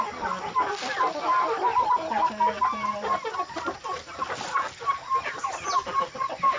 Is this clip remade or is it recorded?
recorded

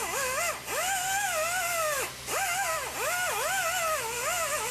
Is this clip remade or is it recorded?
recorded